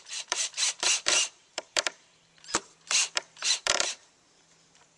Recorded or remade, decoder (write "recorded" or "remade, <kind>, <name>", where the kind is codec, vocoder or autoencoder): remade, vocoder, BigVGAN v2